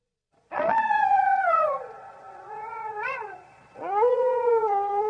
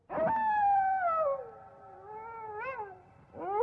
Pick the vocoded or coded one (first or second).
first